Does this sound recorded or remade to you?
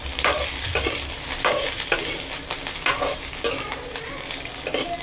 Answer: recorded